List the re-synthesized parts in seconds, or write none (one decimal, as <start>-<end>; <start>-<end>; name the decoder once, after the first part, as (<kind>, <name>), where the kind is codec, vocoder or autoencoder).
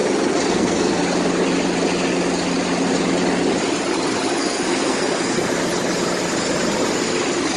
0.5-1.0 (codec, SNAC); 4.4-5.6